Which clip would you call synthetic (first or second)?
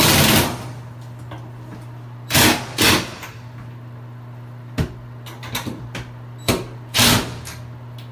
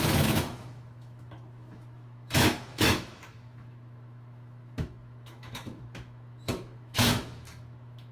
second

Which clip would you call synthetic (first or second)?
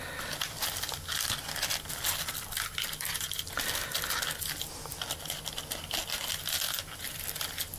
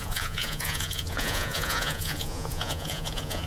second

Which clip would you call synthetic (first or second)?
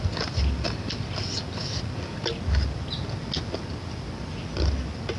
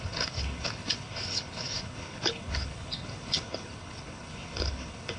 second